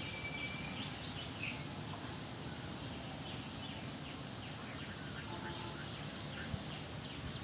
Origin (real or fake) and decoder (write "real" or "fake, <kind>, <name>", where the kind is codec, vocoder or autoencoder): real